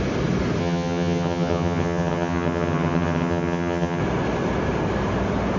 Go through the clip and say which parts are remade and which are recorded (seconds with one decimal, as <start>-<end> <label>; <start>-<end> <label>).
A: 0.0-0.6 recorded; 0.6-4.0 remade; 4.0-5.6 recorded